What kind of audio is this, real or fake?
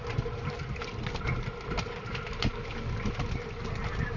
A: real